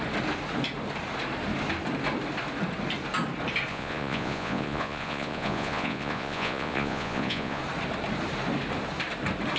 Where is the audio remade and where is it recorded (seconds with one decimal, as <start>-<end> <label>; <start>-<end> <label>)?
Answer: 0.0-3.7 recorded; 3.7-7.6 remade; 7.6-9.6 recorded

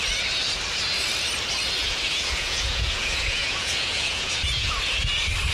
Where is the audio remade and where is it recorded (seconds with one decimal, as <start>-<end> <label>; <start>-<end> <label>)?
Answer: 0.0-1.8 recorded; 1.8-4.8 remade; 4.8-5.5 recorded